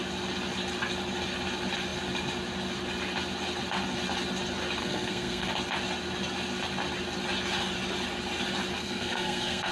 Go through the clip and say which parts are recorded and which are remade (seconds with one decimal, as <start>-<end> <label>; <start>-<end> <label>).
0.0-4.8 recorded; 4.8-5.5 remade; 5.5-8.8 recorded; 8.8-9.7 remade